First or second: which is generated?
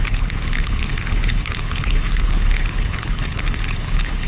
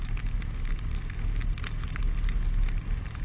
first